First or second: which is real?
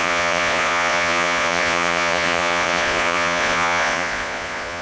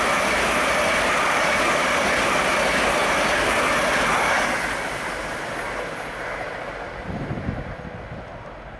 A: second